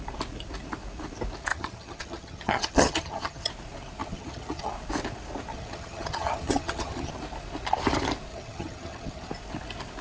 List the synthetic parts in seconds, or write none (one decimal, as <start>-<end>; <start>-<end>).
1.5-3.5; 4.0-4.7; 5.5-7.1; 8.3-9.3